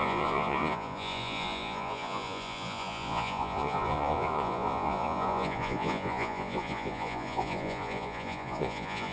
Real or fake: fake